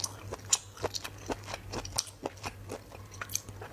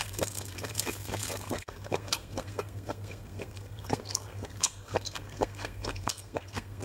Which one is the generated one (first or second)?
second